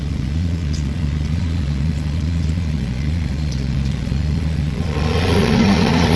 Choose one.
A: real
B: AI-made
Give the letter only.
B